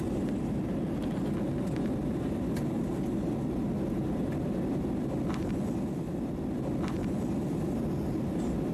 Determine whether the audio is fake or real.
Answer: real